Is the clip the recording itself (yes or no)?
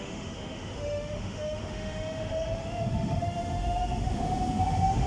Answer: no